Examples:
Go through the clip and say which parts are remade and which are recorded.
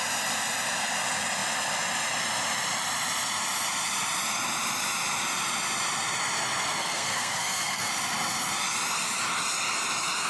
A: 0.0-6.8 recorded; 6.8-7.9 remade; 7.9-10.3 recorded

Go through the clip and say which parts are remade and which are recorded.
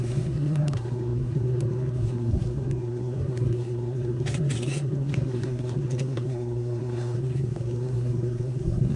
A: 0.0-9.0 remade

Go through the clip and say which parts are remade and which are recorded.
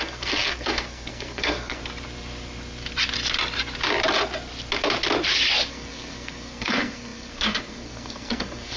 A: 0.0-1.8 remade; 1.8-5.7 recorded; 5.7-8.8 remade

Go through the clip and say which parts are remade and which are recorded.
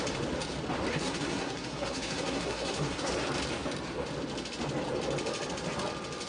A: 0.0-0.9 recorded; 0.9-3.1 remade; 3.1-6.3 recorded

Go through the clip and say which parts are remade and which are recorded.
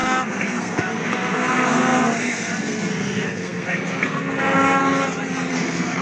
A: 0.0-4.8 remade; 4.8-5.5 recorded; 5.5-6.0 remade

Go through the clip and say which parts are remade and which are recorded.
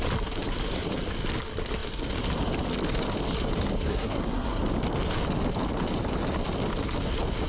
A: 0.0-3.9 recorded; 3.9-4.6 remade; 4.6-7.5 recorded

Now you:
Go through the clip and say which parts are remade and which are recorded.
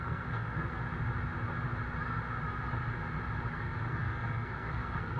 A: 0.0-0.8 remade; 0.8-3.5 recorded; 3.5-5.2 remade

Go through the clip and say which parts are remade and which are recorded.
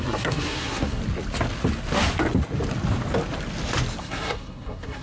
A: 0.0-1.0 remade; 1.0-4.0 recorded; 4.0-5.0 remade